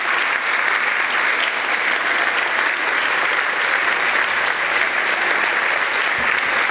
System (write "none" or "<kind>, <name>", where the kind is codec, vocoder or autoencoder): none